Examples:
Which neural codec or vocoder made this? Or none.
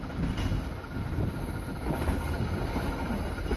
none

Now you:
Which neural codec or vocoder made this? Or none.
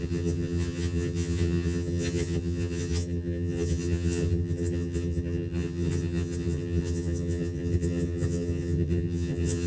vocoder, HiFi-GAN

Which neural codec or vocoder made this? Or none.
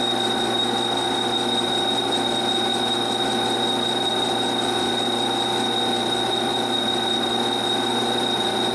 none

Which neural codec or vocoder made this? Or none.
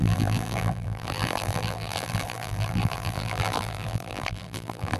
vocoder, BigVGAN v2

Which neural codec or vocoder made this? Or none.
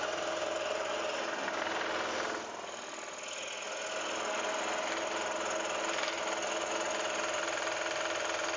none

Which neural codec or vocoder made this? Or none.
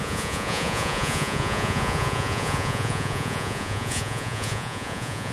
vocoder, Vocos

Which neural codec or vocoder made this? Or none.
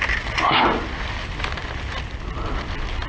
none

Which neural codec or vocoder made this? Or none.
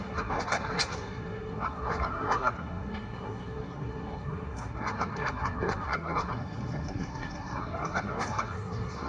codec, SNAC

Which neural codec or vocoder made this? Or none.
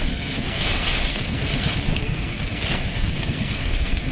codec, SNAC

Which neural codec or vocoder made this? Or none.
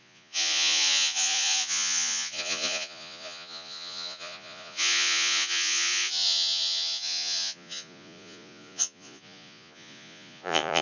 vocoder, Vocos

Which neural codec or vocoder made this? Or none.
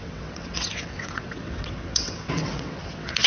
vocoder, WaveNeXt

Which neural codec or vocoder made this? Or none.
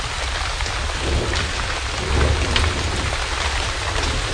none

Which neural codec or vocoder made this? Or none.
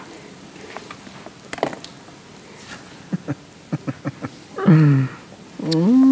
none